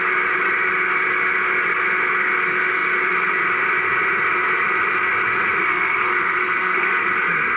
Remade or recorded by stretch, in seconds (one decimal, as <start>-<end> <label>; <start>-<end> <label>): 0.0-5.6 recorded; 5.6-7.0 remade; 7.0-7.6 recorded